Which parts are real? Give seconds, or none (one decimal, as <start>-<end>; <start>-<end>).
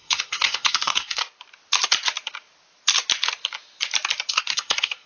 1.2-4.3